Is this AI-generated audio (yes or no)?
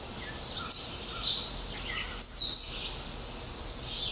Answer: no